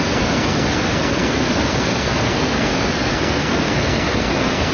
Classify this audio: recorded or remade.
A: remade